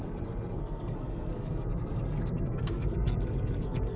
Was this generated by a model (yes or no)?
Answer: yes